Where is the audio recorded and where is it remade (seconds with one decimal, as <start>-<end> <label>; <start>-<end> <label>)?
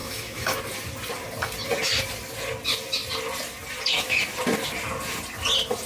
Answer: 0.0-0.6 remade; 0.6-5.9 recorded